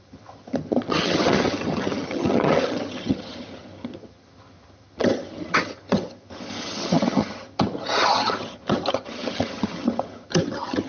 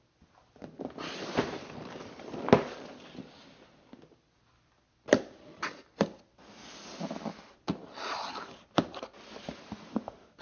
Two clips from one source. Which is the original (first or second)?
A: second